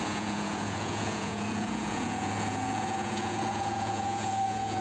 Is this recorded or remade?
remade